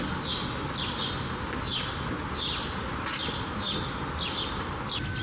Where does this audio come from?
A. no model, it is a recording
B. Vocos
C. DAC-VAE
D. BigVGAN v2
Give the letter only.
A